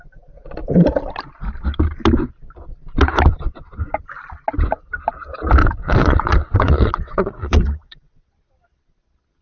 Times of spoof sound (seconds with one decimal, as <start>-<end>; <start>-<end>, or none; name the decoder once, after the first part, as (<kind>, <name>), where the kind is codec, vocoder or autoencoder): 5.6-8.3 (vocoder, WaveNeXt)